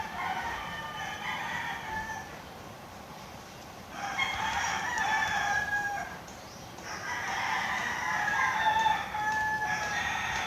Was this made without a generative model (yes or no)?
no